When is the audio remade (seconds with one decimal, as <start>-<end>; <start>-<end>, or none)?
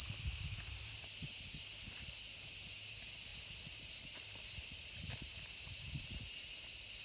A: 0.0-7.0